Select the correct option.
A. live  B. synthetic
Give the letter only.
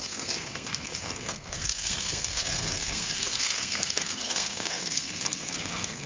B